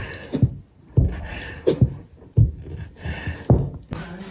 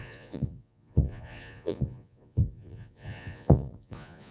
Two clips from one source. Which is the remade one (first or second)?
second